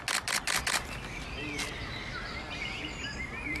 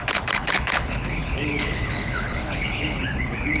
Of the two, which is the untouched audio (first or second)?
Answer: first